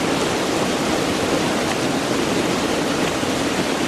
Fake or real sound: real